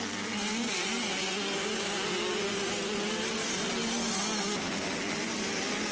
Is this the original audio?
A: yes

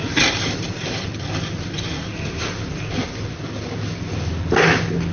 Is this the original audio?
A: yes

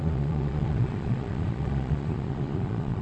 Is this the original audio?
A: no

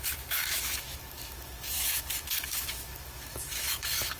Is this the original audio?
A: no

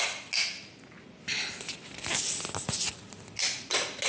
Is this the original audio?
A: yes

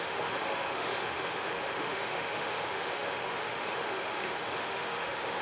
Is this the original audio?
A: no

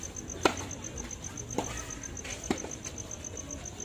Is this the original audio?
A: yes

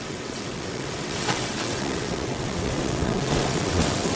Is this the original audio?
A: no